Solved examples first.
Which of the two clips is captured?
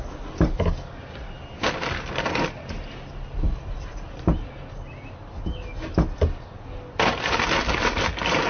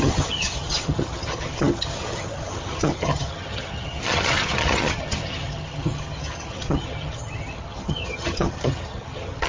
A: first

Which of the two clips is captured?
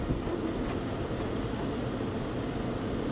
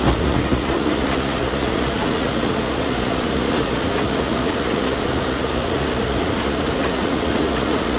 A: first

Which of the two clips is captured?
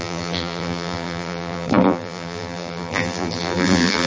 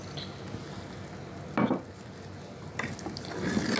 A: second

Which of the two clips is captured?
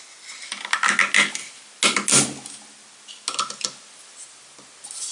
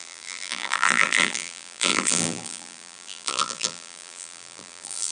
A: first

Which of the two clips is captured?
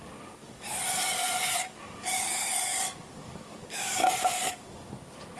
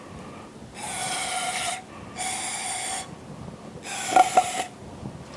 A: second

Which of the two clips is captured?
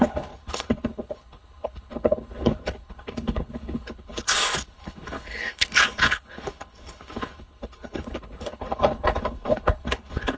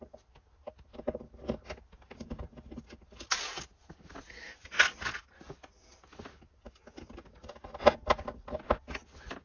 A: second